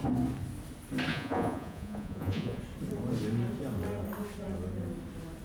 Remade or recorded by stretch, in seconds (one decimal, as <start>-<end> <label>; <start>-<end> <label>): 0.0-1.1 recorded; 1.1-2.6 remade; 2.6-5.4 recorded